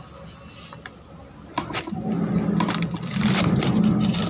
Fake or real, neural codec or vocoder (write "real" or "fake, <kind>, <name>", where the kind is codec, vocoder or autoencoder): real